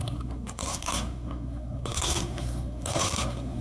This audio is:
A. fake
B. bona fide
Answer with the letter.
A